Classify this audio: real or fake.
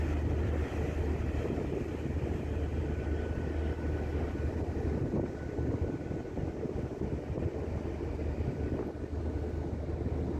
real